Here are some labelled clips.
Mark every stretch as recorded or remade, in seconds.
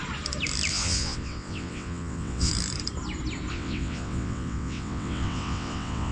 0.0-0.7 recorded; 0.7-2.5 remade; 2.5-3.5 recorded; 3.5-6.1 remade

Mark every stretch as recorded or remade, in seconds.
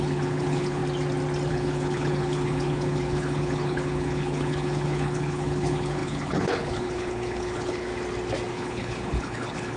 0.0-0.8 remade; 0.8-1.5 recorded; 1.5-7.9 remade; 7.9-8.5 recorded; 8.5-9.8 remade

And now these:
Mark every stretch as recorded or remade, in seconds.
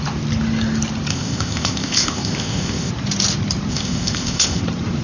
0.0-1.1 recorded; 1.1-2.9 remade; 2.9-3.7 recorded; 3.7-4.6 remade; 4.6-5.0 recorded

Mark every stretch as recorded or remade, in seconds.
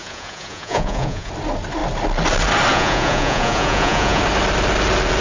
0.0-1.3 remade; 1.3-2.7 recorded; 2.7-4.2 remade; 4.2-5.2 recorded